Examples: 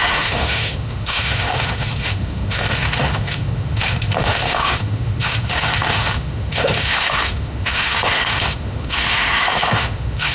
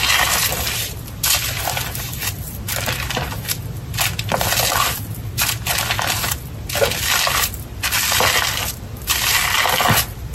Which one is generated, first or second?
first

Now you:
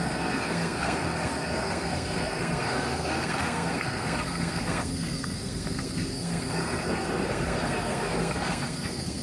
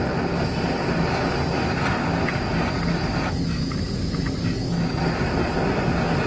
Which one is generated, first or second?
first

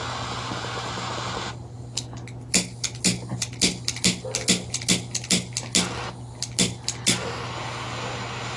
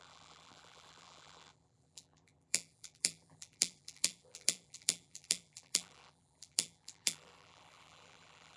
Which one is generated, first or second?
second